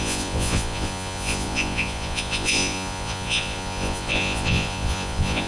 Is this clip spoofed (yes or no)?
yes